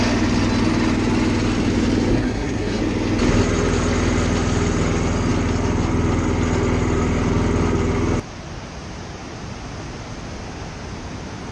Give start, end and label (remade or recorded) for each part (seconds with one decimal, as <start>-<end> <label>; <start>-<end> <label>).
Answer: 0.0-2.1 recorded; 2.1-2.8 remade; 2.8-11.5 recorded